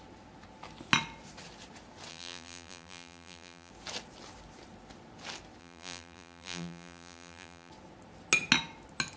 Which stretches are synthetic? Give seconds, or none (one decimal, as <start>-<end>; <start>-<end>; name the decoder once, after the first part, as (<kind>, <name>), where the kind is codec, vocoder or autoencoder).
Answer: 2.1-3.7 (vocoder, BigVGAN v2); 5.6-7.7